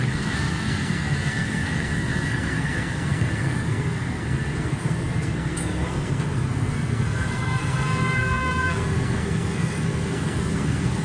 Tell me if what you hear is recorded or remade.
remade